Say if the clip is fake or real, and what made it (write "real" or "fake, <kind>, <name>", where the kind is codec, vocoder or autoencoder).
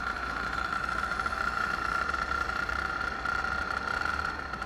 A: fake, vocoder, BigVGAN v2